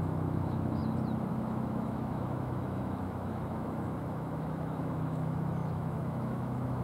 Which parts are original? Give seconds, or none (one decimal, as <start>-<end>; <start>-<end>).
0.8-1.3